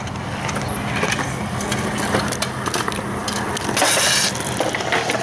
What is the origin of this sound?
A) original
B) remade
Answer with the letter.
A